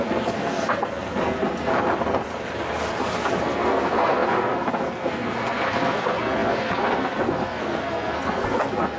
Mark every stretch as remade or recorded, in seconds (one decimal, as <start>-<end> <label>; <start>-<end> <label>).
0.0-1.7 remade; 1.7-3.4 recorded; 3.4-9.0 remade